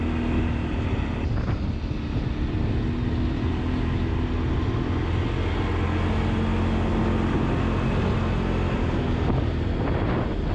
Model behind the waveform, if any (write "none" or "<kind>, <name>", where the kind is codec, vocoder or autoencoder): none